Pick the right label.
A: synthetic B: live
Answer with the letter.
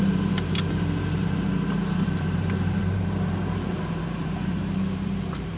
A